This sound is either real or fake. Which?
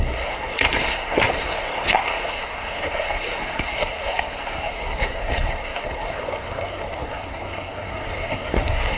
fake